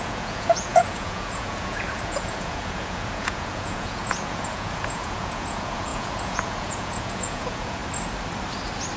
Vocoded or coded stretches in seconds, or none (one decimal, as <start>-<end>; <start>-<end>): 0.0-7.8